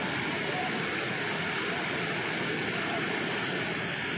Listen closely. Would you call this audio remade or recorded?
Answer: recorded